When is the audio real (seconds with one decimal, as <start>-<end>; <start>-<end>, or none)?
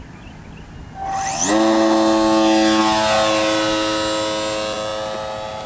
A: 0.0-5.7